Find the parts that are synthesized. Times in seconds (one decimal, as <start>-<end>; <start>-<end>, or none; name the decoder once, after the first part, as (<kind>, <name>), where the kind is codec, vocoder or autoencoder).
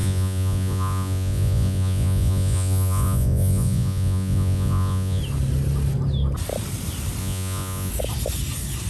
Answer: 0.0-5.2 (vocoder, Vocos); 7.2-7.9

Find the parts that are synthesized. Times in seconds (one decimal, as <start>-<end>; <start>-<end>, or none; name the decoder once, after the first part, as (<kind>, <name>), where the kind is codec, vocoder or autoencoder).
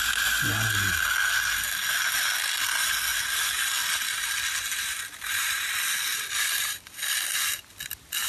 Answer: none